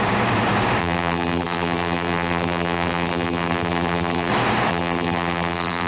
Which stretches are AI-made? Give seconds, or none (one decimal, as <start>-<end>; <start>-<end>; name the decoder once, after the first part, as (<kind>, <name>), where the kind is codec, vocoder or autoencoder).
0.8-4.3 (vocoder, BigVGAN v2); 4.7-5.9